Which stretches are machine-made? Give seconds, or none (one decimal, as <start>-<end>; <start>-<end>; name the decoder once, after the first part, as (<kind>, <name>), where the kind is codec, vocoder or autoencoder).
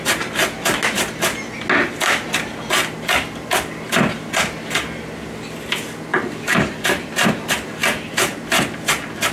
6.1-7.3 (vocoder, BigVGAN v2)